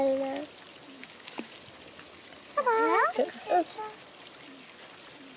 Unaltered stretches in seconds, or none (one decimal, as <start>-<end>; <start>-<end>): 0.0-1.0; 1.6-5.4